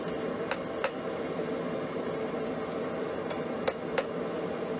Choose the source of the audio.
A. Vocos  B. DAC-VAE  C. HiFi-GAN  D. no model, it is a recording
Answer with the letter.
D